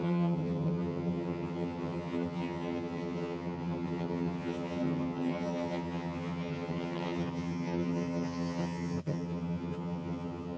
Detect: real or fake fake